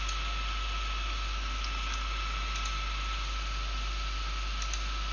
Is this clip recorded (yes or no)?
yes